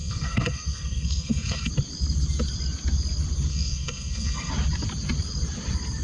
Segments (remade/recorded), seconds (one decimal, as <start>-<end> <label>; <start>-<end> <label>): 0.0-1.7 remade; 1.7-3.5 recorded; 3.5-4.5 remade; 4.5-6.0 recorded